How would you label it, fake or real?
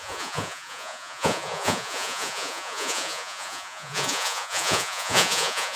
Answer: fake